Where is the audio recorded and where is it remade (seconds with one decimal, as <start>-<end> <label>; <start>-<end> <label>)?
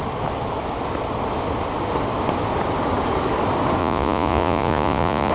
0.0-3.8 recorded; 3.8-5.3 remade